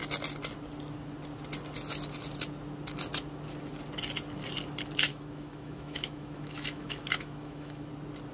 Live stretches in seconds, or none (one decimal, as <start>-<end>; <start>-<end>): 0.0-5.1; 7.9-8.3